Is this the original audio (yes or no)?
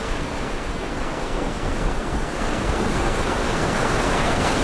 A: no